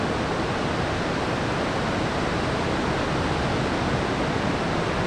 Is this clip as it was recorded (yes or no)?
yes